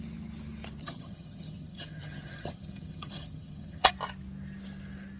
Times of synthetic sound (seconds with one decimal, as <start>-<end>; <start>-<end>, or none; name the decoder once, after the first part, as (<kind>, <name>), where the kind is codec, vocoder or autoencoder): 0.8-3.9 (vocoder, HiFi-GAN)